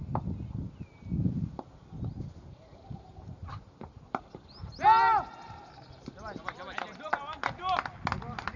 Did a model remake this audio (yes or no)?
no